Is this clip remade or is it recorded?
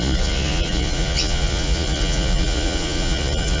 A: remade